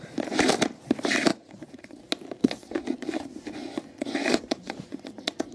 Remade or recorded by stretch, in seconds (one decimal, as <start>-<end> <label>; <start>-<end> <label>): 0.0-1.3 recorded; 1.3-2.0 remade; 2.0-2.4 recorded; 2.4-5.5 remade